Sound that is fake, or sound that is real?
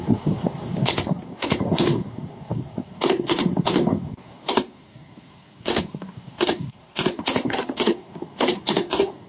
fake